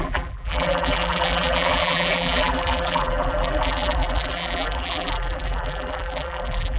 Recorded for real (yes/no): no